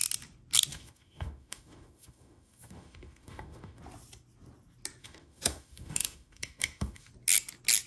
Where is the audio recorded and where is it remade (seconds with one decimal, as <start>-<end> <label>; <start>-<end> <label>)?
0.0-0.7 recorded; 0.7-3.8 remade; 3.8-5.0 recorded; 5.0-7.1 remade; 7.1-7.9 recorded